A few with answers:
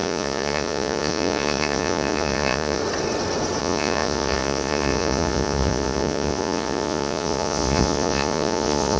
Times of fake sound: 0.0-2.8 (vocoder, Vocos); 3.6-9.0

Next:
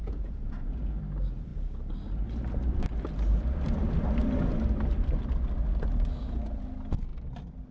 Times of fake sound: 0.0-1.0 (vocoder, Vocos)